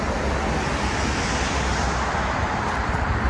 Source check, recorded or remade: recorded